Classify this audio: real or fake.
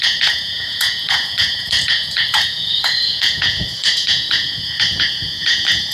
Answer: fake